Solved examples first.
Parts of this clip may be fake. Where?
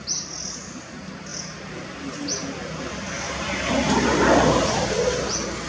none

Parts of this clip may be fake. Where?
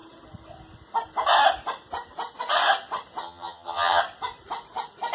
3.2-4.0 (vocoder, HiFi-GAN)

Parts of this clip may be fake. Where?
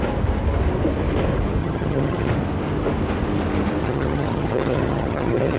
1.6-2.3 (vocoder, HiFi-GAN); 3.8-5.6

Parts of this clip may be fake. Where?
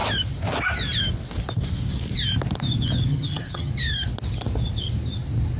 3.1-3.7 (vocoder, HiFi-GAN)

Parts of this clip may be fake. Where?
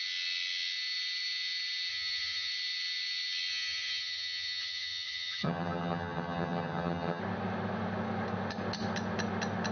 1.9-2.5 (vocoder, HiFi-GAN); 3.5-7.2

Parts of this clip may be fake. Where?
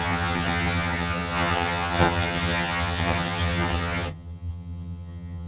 0.0-5.5 (vocoder, HiFi-GAN)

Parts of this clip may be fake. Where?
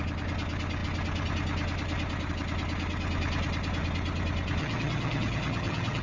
4.6-6.0 (vocoder, HiFi-GAN)